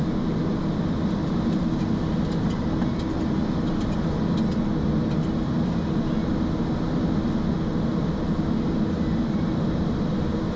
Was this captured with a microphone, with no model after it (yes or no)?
yes